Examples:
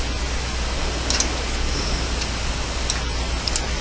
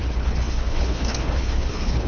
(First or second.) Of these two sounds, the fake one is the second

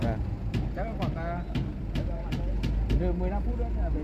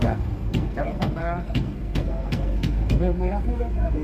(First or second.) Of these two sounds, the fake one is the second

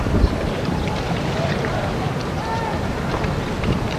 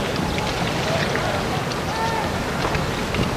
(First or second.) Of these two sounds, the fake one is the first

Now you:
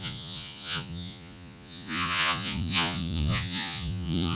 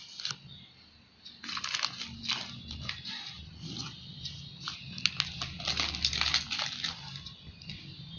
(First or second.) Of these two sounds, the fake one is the first